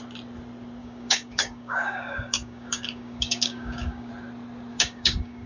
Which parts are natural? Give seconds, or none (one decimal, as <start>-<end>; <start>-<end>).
0.0-0.8; 4.1-4.7